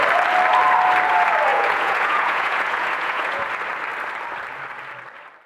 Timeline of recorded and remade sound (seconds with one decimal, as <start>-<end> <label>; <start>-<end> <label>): 0.0-1.5 recorded; 1.5-3.5 remade; 3.5-5.5 recorded